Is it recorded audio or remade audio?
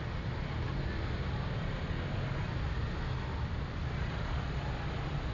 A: recorded